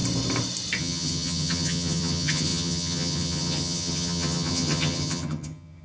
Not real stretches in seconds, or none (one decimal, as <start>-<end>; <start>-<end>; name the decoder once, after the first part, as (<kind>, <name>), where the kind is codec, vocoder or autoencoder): 0.8-5.8 (vocoder, HiFi-GAN)

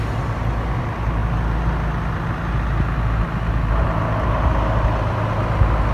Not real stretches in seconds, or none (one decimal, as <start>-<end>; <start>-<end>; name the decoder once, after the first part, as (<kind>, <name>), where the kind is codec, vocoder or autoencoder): none

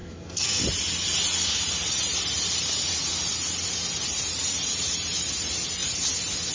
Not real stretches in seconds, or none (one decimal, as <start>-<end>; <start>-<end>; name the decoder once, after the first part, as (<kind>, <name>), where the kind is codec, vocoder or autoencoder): 0.0-0.6 (codec, SNAC)

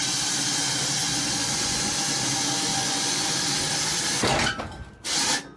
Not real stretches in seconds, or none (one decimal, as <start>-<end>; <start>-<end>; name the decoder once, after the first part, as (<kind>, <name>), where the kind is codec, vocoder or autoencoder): 1.0-1.9 (vocoder, Vocos); 2.7-3.3

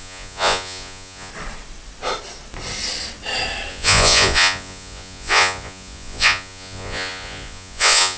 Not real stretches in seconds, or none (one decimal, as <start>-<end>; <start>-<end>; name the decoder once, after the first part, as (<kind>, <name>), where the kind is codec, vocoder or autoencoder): 0.0-1.3 (vocoder, Vocos); 3.7-8.2